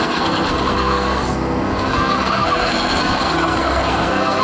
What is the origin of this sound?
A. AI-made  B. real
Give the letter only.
A